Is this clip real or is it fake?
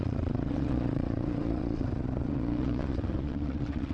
fake